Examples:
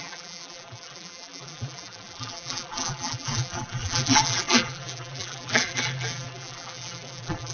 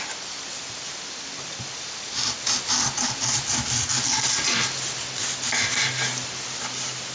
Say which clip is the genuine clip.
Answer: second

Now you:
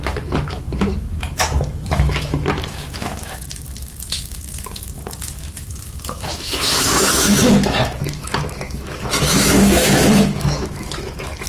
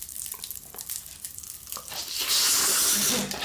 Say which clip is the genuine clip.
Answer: second